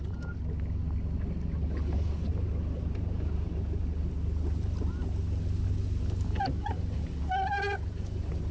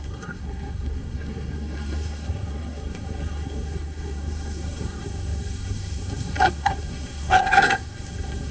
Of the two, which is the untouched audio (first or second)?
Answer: first